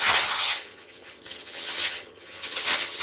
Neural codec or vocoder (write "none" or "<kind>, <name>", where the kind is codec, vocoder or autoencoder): vocoder, HiFi-GAN